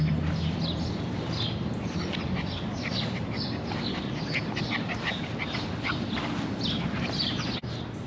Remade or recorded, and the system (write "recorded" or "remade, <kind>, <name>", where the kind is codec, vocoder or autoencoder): recorded